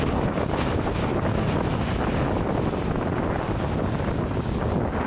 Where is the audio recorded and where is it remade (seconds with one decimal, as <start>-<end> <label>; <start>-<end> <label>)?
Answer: 0.0-5.1 recorded